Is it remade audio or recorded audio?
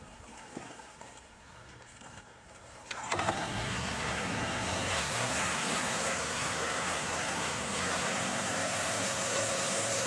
remade